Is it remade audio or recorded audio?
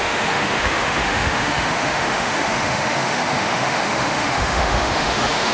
remade